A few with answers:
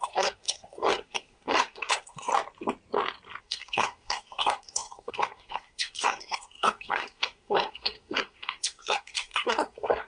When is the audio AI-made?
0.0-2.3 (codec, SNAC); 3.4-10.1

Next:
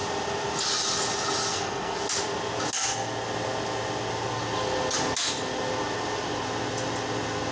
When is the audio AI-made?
1.5-2.0 (codec, SNAC)

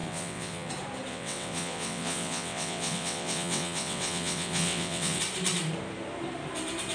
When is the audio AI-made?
0.0-0.7 (vocoder, WaveNeXt); 1.1-5.2